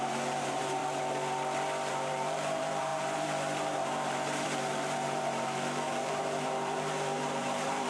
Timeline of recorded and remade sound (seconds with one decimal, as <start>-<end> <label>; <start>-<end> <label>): 0.0-0.8 remade; 0.8-1.9 recorded; 1.9-7.9 remade